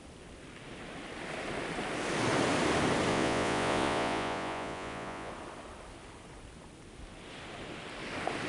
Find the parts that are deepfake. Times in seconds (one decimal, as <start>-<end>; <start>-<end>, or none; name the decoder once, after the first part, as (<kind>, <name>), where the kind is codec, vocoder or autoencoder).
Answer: 3.1-5.3 (vocoder, Vocos)